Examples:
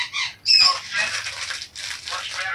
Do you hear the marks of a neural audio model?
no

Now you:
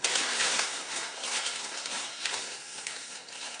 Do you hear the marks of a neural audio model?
yes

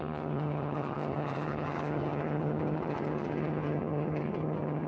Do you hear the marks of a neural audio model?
yes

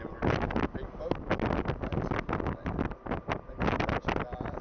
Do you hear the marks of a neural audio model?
no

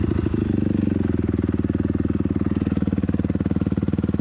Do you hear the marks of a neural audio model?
no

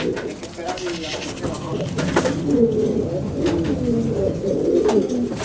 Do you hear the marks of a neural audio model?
no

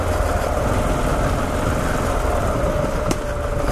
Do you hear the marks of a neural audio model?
no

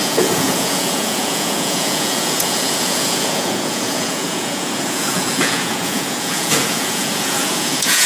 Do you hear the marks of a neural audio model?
yes